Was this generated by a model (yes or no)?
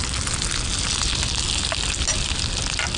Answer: no